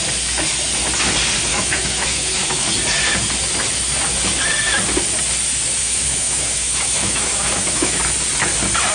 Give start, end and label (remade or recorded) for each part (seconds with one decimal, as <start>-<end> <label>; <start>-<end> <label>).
0.0-1.5 recorded; 1.5-2.7 remade; 2.7-5.8 recorded; 5.8-8.0 remade; 8.0-8.9 recorded